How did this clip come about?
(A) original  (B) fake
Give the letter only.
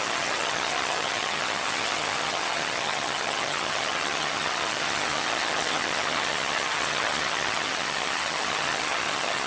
B